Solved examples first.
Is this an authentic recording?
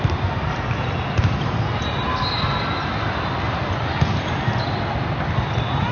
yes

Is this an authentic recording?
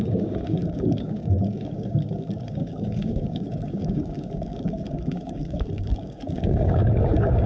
no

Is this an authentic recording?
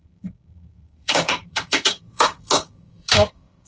no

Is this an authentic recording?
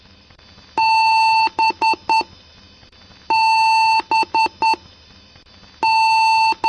yes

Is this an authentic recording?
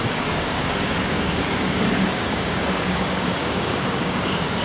no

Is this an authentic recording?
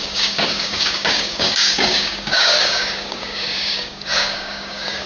no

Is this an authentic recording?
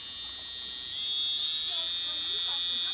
yes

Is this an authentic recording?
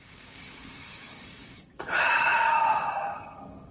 no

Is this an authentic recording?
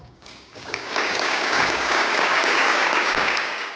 no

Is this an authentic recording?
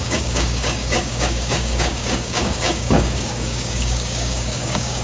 no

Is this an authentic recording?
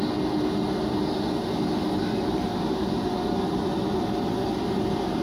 yes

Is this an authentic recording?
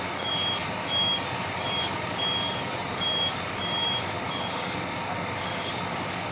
no